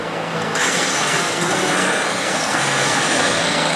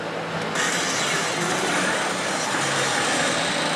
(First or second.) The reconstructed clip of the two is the first